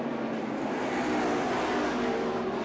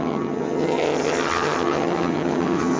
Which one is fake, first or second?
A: second